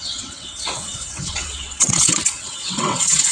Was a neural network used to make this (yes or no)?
yes